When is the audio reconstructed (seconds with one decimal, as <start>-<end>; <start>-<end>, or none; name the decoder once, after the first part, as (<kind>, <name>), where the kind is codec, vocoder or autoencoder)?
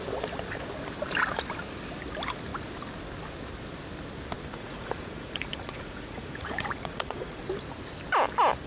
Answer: 4.5-7.4 (vocoder, Vocos)